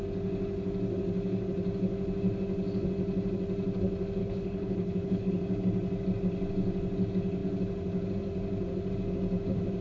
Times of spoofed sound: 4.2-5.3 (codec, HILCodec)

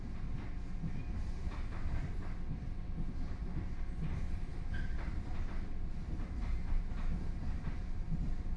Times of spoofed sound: none

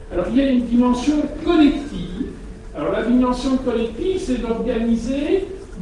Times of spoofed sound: 0.0-0.6 (codec, HILCodec)